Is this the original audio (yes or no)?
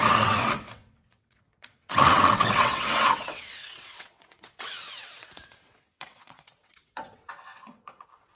no